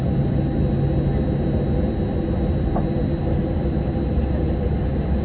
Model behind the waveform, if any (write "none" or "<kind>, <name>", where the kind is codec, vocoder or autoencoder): none